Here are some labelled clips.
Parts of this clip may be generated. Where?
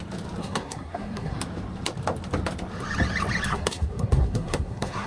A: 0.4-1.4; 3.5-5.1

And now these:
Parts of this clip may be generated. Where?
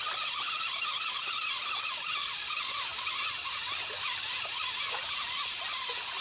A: none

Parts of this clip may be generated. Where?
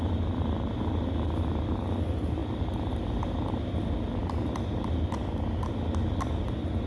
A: none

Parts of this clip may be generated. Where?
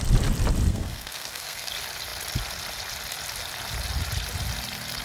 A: 0.7-1.7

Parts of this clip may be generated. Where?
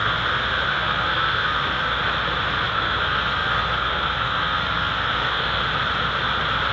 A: 0.0-2.0; 2.7-5.6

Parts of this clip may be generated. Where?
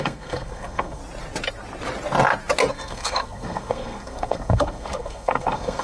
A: 0.0-1.0; 2.7-5.8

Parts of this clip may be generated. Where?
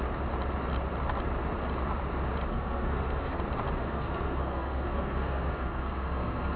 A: 2.5-3.4; 3.8-6.6